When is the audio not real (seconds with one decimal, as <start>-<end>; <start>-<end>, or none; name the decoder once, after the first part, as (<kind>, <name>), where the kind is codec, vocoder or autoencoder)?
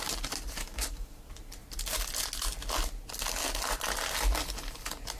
0.6-1.2 (codec, DAC)